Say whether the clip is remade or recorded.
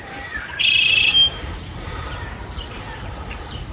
remade